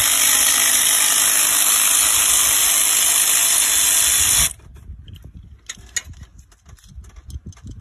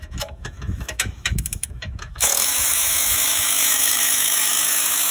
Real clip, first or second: first